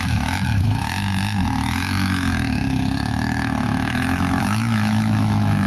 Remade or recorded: remade